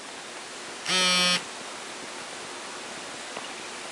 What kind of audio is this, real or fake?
real